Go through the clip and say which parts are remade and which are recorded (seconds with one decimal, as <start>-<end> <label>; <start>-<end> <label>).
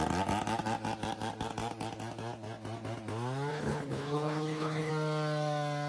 0.0-3.5 recorded; 3.5-4.9 remade; 4.9-5.9 recorded